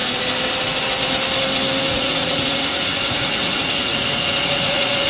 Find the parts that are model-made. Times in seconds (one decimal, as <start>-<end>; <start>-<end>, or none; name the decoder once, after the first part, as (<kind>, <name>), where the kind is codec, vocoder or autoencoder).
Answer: 1.9-5.1 (vocoder, Vocos)